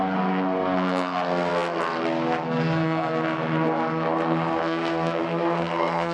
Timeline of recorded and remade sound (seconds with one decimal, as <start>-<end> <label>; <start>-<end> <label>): 0.0-6.1 remade